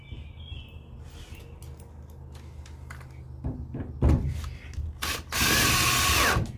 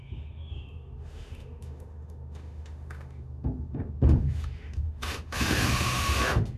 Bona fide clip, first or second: first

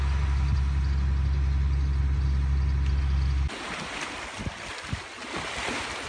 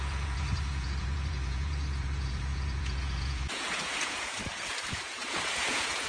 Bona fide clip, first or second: first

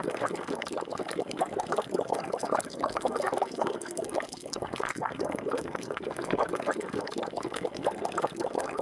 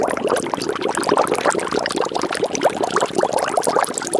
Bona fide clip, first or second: second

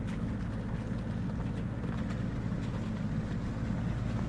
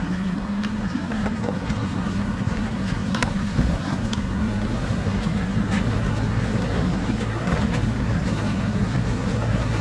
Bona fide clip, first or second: first